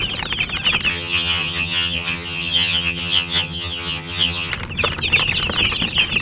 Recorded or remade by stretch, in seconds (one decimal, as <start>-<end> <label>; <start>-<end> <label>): 0.0-0.9 recorded; 0.9-4.5 remade; 4.5-6.2 recorded